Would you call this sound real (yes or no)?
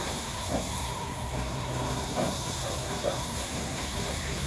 no